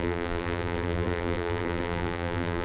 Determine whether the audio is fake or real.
fake